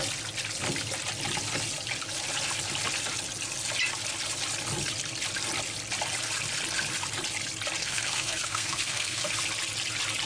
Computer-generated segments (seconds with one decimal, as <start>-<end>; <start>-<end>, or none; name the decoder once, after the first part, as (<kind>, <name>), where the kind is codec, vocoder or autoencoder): 7.8-9.3 (codec, SNAC)